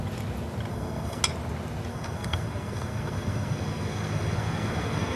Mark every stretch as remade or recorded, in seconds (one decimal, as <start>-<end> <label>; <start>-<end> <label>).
0.0-0.7 recorded; 0.7-1.2 remade; 1.2-1.9 recorded; 1.9-5.2 remade